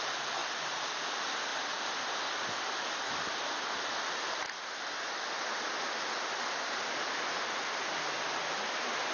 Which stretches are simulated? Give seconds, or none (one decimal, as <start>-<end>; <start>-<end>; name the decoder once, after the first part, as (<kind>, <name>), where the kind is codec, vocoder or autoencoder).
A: none